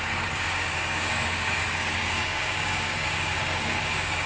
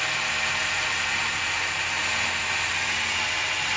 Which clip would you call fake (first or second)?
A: first